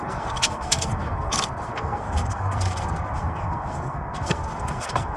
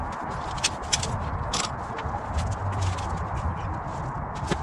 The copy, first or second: first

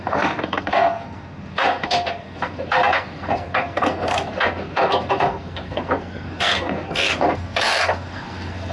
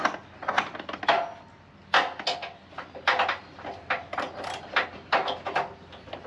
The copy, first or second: first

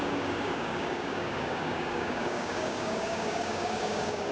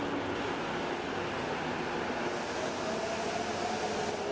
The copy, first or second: first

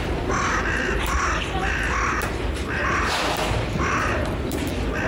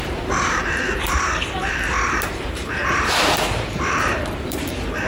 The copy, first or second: second